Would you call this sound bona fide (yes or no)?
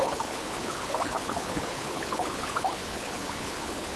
no